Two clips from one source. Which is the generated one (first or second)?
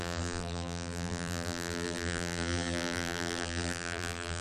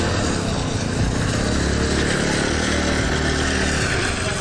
first